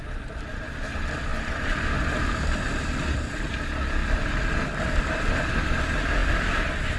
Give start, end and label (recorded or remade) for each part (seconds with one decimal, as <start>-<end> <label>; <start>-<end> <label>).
0.0-7.0 recorded